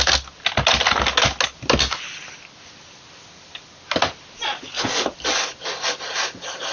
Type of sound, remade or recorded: recorded